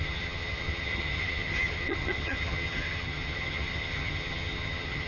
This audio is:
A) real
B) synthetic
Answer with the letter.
B